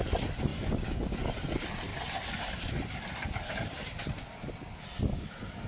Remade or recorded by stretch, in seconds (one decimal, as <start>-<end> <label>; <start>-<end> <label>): 0.0-5.7 recorded